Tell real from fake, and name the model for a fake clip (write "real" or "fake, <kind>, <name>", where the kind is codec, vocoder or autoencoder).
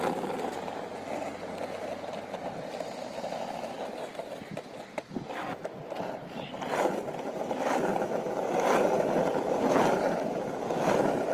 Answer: real